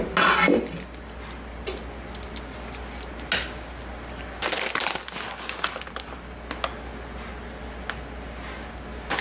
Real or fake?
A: real